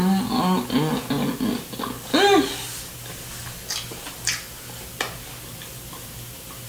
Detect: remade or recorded recorded